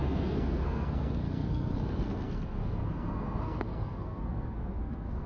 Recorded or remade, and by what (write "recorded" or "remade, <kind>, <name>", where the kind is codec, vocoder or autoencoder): remade, codec, SNAC